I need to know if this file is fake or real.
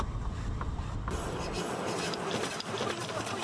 real